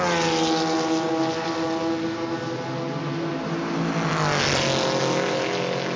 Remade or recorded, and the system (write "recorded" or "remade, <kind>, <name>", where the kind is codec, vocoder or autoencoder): recorded